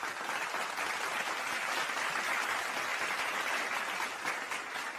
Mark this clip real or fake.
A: real